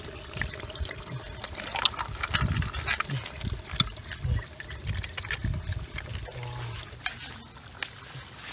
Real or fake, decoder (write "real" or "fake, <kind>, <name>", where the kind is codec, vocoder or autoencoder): real